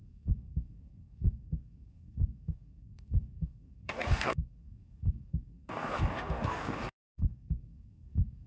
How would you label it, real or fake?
fake